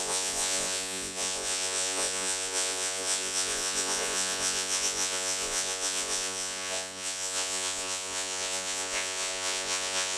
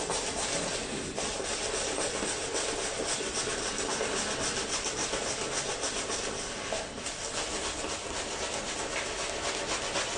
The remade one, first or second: first